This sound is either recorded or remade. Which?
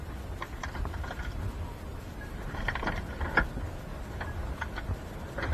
recorded